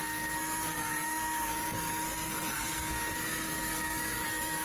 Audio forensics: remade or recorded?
remade